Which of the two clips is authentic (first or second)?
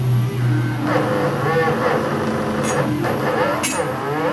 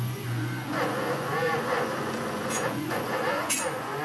first